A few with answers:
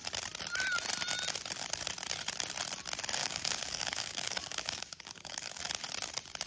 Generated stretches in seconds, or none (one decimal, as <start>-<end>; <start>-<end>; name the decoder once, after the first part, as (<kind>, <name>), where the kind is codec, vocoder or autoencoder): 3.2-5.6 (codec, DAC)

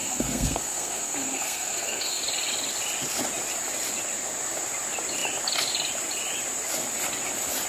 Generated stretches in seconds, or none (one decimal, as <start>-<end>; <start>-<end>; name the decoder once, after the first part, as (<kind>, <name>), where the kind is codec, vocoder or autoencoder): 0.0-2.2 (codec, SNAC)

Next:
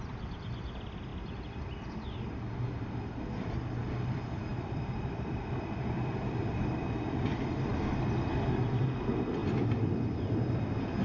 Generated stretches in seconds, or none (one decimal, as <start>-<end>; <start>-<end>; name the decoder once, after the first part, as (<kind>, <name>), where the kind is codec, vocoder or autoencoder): 4.5-7.7 (vocoder, BigVGAN v2); 9.4-10.5

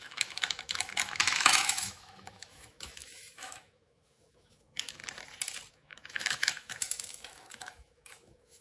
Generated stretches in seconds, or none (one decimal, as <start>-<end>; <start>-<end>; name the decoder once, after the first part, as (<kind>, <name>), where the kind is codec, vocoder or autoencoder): 0.0-5.0 (autoencoder, DAC-VAE); 5.7-8.6

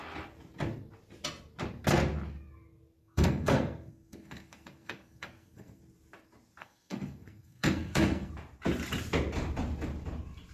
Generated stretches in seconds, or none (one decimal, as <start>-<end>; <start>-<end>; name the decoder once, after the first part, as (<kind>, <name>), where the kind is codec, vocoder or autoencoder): 3.0-5.8 (codec, SNAC); 6.6-8.3

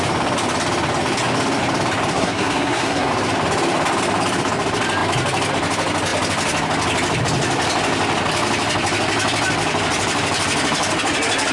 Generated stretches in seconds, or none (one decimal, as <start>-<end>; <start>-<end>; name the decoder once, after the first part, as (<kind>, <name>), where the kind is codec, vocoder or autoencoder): 2.1-3.1 (codec, SNAC)